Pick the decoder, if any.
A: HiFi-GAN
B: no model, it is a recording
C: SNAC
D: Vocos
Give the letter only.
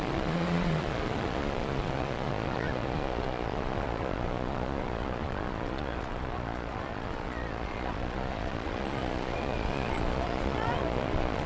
D